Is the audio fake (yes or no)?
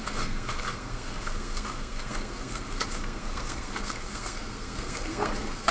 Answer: yes